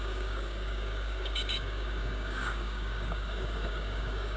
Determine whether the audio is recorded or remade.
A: remade